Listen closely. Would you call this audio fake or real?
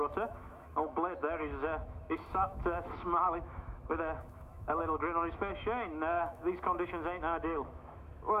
fake